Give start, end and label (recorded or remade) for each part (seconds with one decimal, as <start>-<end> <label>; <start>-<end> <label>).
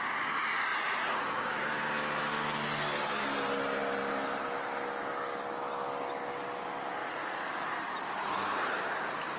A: 0.0-0.7 recorded; 0.7-1.5 remade; 1.5-7.0 recorded; 7.0-7.7 remade; 7.7-9.4 recorded